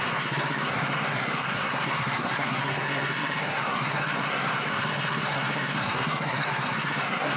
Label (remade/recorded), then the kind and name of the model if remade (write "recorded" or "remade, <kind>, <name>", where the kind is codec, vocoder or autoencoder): remade, codec, SNAC